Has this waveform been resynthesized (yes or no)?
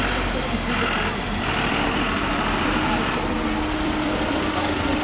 yes